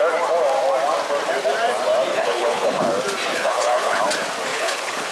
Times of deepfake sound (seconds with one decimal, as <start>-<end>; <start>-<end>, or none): 2.1-2.8; 3.3-4.0; 4.5-5.1